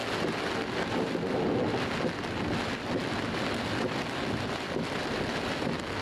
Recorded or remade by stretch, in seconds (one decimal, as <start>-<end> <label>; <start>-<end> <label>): 0.0-6.0 recorded